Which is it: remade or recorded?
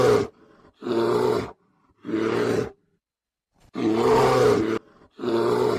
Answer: recorded